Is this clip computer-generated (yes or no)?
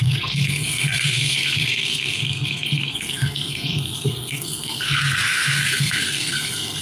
yes